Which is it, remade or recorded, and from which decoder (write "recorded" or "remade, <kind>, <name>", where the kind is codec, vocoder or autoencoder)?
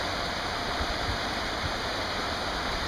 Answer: remade, vocoder, BigVGAN v2